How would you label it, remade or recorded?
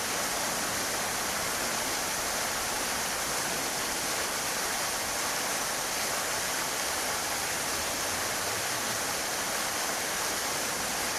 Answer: recorded